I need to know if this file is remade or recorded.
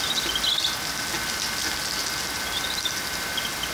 recorded